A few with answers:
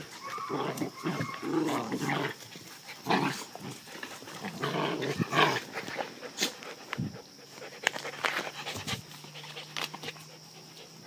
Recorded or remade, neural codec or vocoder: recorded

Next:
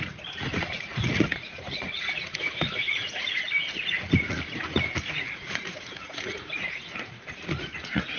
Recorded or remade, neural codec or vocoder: remade, vocoder, Vocos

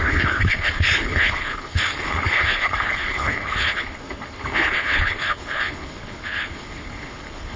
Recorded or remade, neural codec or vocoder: remade, codec, HILCodec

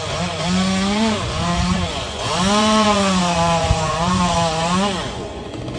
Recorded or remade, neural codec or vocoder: remade, vocoder, Vocos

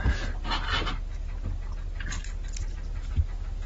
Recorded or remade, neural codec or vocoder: recorded